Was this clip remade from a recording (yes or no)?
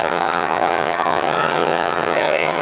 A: yes